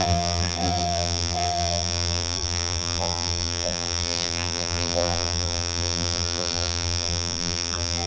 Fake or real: fake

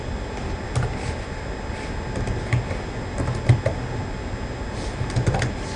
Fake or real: real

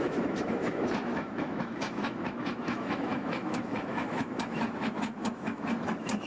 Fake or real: fake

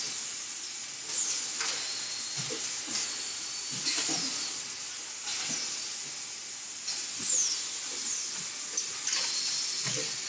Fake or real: real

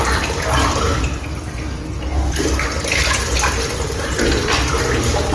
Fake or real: real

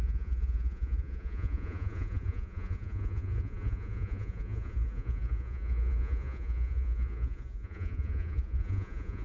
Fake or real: fake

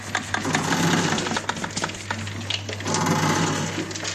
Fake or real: real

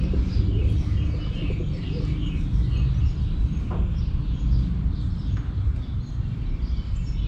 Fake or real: real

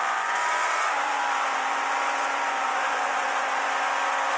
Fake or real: fake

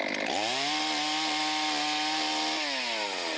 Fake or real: real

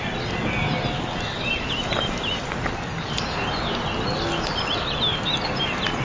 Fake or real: real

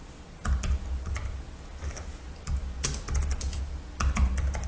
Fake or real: real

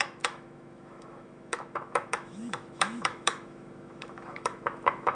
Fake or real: fake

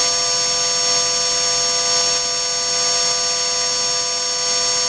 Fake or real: real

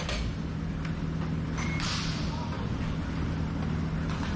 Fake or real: real